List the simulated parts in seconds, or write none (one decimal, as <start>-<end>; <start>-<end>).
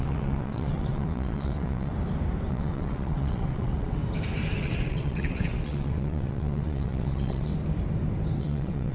0.0-1.9; 2.5-4.0; 4.6-7.5; 8.4-8.9